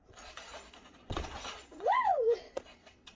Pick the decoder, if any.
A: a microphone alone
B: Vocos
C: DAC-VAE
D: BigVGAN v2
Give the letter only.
B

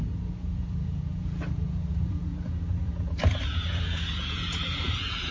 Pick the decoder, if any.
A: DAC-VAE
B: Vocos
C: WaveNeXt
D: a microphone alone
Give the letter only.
B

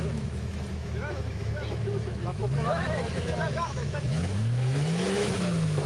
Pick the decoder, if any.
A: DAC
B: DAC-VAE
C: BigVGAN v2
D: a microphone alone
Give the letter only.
B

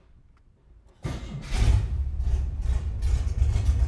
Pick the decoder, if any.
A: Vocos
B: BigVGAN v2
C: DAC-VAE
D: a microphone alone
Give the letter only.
D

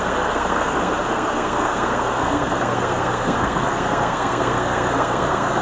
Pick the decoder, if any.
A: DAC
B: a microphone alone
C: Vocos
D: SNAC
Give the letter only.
D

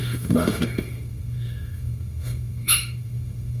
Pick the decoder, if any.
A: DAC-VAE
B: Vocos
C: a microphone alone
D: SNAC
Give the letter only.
A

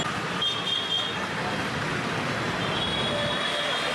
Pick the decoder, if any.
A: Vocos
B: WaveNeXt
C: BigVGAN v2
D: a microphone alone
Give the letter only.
D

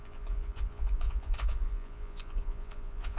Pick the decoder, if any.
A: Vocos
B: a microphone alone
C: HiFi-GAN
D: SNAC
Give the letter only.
A